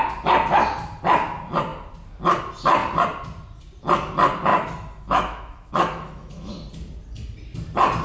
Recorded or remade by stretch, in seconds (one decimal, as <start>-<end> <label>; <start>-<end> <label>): 0.0-4.5 recorded; 4.5-6.5 remade; 6.5-8.0 recorded